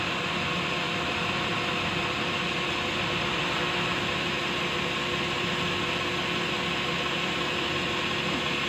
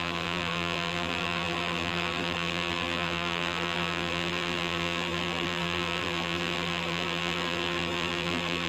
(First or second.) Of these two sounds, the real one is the first